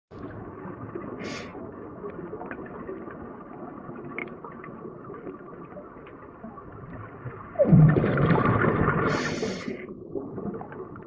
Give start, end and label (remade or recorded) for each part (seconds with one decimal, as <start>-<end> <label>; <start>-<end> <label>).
0.0-4.2 recorded; 4.2-5.0 remade; 5.0-11.1 recorded